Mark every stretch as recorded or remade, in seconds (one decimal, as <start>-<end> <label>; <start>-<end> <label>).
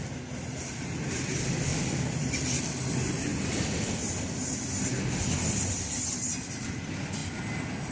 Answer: 0.0-7.9 recorded